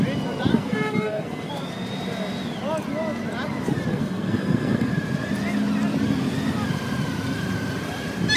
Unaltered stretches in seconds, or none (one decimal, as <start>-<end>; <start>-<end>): 0.0-0.5; 1.5-3.9; 4.9-8.4